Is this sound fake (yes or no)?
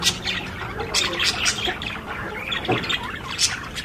no